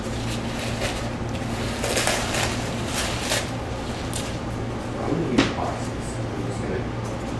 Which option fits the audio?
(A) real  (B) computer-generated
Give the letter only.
A